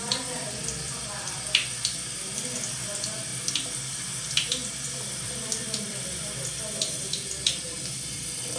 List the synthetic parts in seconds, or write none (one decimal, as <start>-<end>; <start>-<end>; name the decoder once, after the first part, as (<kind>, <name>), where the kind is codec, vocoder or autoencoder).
0.0-3.3 (vocoder, BigVGAN v2); 4.7-8.6